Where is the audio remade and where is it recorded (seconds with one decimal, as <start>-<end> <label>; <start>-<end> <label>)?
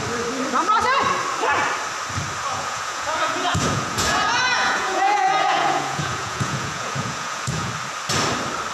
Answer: 0.0-2.5 recorded; 2.5-7.7 remade; 7.7-8.7 recorded